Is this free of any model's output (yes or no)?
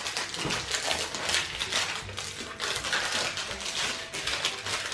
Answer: yes